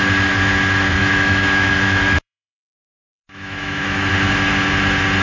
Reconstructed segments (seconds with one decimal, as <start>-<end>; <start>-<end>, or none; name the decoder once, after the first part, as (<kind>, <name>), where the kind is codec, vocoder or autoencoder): 1.0-4.1 (autoencoder, DAC-VAE)